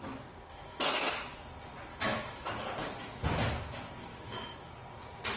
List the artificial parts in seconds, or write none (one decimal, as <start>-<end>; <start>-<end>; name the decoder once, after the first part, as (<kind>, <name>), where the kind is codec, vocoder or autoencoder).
0.5-1.1 (autoencoder, DAC-VAE); 1.9-2.5; 4.1-4.7